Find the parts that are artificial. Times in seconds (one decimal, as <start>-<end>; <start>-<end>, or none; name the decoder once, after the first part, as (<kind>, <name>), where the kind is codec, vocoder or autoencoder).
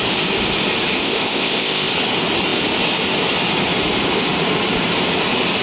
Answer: 1.0-1.9 (codec, ZipCodec)